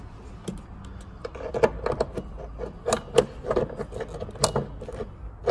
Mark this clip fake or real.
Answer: real